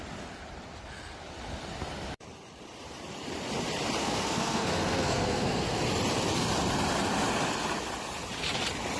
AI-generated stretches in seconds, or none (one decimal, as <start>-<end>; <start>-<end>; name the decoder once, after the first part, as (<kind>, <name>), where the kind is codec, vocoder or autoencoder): 4.0-5.8 (codec, SNAC)